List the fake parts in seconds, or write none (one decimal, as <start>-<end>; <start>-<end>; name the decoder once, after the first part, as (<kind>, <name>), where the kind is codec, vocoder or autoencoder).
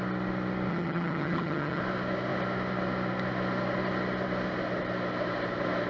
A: 0.7-1.8 (vocoder, HiFi-GAN)